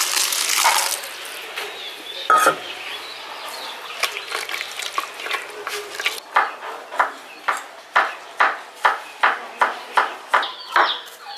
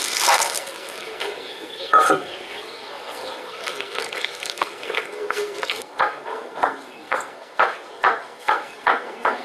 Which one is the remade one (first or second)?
second